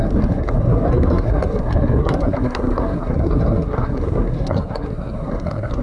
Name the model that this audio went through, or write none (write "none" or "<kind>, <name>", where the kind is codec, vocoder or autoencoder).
codec, SNAC